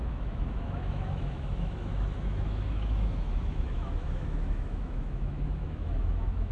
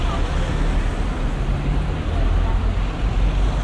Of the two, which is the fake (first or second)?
first